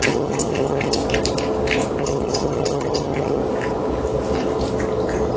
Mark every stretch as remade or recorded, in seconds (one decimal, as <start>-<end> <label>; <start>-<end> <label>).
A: 0.0-1.0 remade; 1.0-2.0 recorded; 2.0-3.4 remade; 3.4-5.4 recorded